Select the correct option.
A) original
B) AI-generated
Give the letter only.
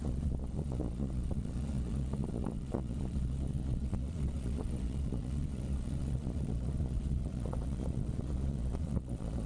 B